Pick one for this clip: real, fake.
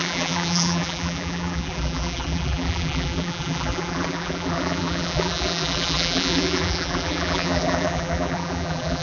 fake